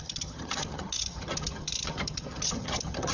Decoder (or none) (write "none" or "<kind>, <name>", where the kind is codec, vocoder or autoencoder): vocoder, HiFi-GAN